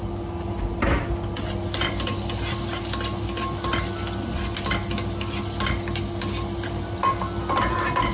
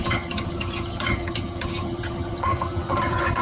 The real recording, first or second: first